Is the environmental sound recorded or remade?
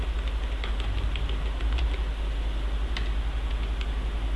recorded